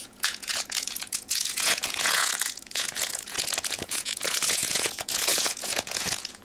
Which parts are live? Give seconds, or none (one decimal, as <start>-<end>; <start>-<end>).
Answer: none

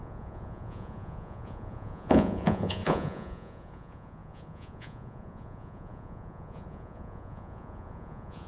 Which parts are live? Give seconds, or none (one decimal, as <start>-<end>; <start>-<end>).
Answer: none